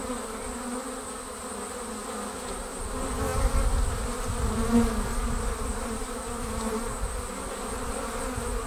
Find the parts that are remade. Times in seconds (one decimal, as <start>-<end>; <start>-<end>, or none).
none